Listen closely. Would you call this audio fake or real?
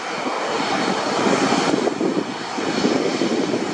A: real